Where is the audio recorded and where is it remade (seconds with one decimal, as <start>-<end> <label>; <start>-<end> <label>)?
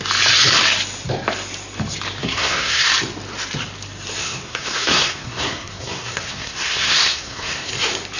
0.0-2.2 recorded; 2.2-2.9 remade; 2.9-4.2 recorded; 4.2-7.7 remade; 7.7-8.2 recorded